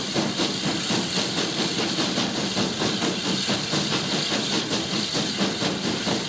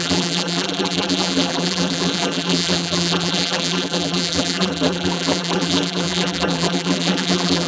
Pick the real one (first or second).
first